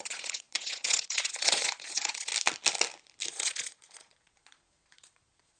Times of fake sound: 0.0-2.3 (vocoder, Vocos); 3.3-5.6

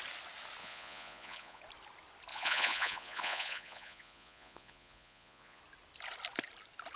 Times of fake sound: 0.6-1.6 (vocoder, Vocos); 2.3-5.6

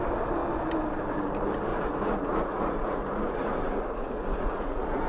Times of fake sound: 1.7-5.1 (vocoder, Vocos)

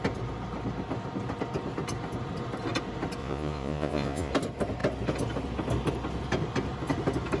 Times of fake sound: 3.2-4.3 (vocoder, Vocos)